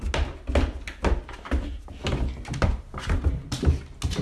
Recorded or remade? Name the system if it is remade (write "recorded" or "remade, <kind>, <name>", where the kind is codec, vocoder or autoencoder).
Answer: recorded